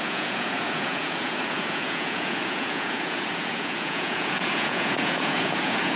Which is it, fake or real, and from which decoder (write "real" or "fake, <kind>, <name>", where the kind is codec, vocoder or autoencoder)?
fake, vocoder, Vocos